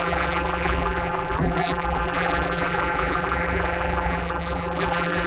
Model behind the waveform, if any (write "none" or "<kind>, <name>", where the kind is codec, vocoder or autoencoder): vocoder, BigVGAN v2